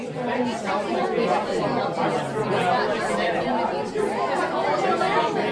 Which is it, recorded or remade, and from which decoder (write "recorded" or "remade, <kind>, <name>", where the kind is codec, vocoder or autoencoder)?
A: recorded